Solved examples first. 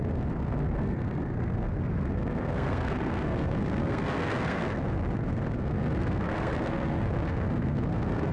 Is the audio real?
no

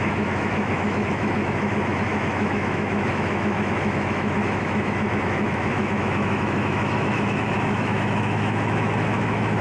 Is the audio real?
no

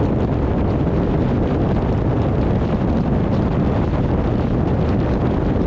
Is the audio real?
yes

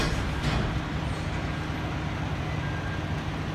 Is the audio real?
yes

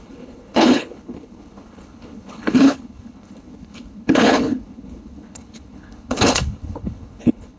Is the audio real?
no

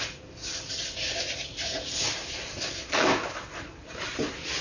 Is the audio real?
yes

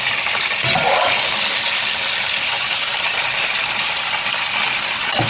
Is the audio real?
yes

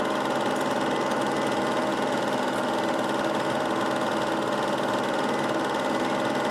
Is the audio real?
yes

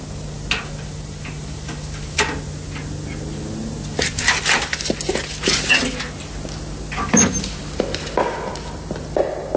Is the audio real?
yes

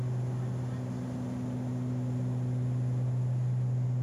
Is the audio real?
yes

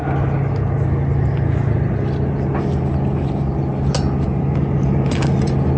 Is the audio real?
yes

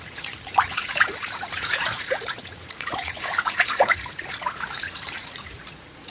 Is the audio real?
no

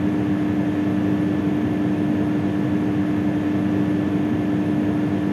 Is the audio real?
yes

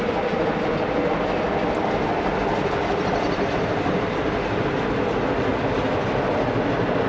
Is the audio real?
yes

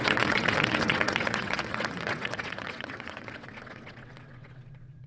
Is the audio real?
no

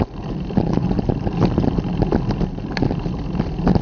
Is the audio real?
yes